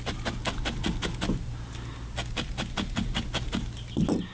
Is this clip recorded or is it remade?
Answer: recorded